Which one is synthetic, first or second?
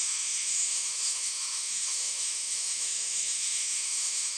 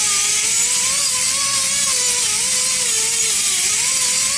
first